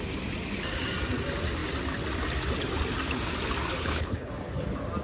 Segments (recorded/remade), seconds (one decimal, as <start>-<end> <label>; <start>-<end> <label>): 0.0-3.8 recorded; 3.8-4.3 remade; 4.3-5.0 recorded